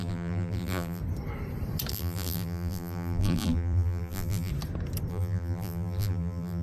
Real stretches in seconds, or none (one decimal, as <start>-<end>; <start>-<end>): 1.0-1.9; 4.5-5.1